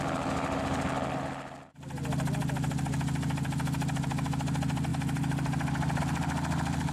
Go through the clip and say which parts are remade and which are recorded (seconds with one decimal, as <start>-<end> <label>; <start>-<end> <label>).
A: 0.0-6.9 recorded